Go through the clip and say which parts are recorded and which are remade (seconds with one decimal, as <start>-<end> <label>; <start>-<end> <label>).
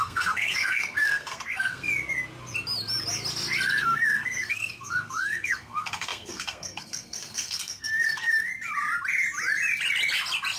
0.0-1.9 remade; 1.9-3.8 recorded; 3.8-8.5 remade; 8.5-10.6 recorded